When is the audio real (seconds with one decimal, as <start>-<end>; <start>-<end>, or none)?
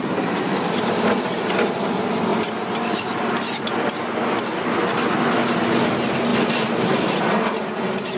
0.0-2.3; 4.0-6.3; 7.2-8.2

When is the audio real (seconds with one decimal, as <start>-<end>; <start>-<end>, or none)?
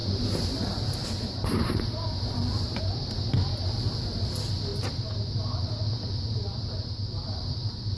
2.8-4.7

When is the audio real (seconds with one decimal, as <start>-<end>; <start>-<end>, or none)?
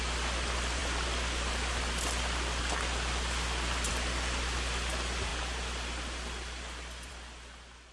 0.0-7.9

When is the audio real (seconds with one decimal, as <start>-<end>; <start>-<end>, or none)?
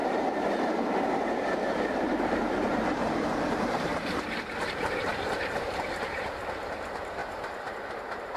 7.2-8.0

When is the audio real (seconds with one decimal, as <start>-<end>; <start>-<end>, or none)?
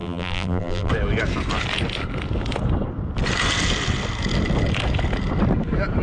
0.9-6.0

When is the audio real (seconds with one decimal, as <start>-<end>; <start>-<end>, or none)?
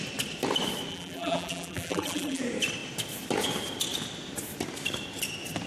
0.0-0.9; 2.4-5.7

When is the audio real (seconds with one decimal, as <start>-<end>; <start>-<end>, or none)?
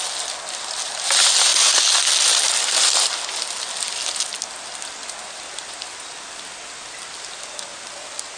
0.0-8.4